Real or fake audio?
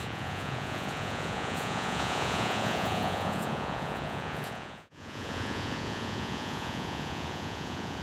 fake